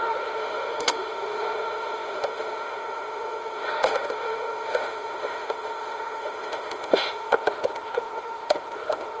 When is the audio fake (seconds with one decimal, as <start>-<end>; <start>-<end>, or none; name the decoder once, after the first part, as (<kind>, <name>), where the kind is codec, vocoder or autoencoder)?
0.0-9.2 (autoencoder, DAC-VAE)